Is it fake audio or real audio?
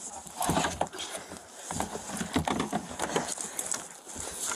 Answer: real